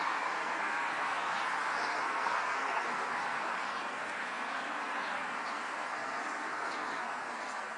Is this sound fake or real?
fake